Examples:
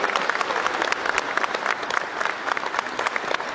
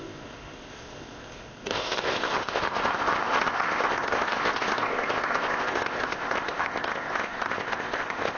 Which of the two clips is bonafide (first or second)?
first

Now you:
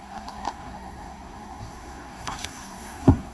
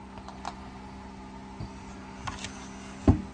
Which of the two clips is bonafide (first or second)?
second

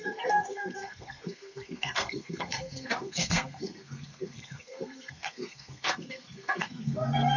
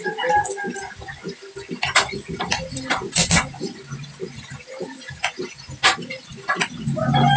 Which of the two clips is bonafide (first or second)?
second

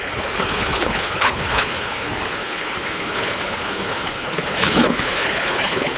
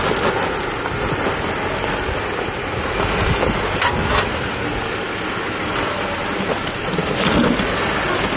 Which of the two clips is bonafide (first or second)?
second